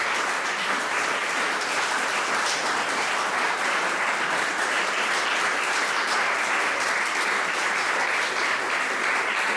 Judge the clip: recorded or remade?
recorded